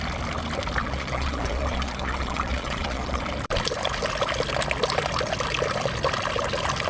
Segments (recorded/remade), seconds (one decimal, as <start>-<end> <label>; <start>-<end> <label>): 0.0-0.8 recorded; 0.8-3.2 remade; 3.2-6.9 recorded